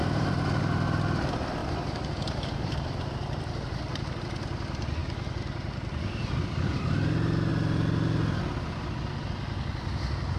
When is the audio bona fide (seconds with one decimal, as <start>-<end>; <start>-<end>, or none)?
0.6-1.6; 4.2-10.4